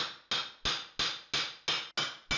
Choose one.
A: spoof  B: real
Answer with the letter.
B